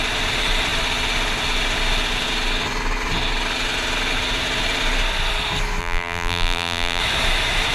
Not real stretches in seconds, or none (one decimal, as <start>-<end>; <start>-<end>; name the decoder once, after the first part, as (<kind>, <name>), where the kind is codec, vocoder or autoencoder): 5.8-7.0 (vocoder, BigVGAN v2)